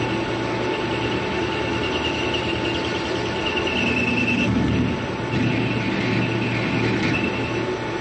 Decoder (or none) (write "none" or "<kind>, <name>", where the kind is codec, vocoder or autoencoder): none